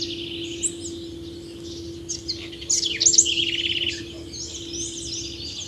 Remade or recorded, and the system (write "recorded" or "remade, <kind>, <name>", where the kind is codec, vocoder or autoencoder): recorded